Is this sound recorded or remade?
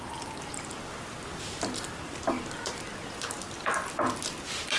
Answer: recorded